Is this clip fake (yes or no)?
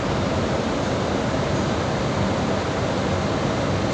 no